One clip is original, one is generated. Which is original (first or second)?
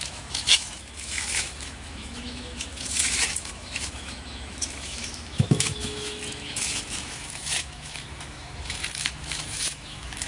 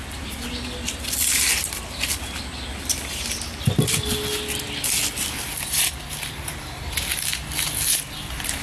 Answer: second